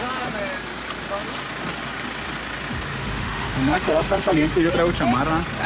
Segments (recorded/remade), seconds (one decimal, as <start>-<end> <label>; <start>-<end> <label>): 0.0-2.9 recorded; 2.9-4.7 remade; 4.7-5.7 recorded